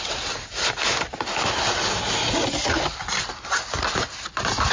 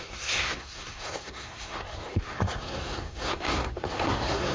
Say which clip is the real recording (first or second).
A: first